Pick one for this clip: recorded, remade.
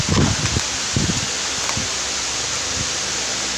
remade